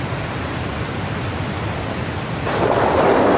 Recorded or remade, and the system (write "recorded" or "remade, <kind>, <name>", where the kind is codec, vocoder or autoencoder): remade, vocoder, BigVGAN v2